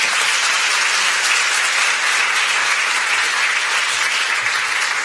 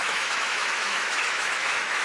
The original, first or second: first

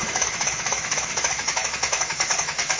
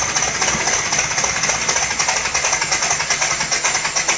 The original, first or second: second